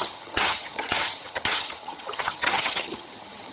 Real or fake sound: fake